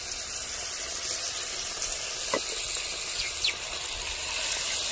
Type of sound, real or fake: real